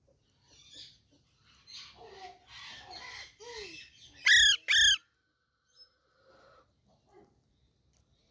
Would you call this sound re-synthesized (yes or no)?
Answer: no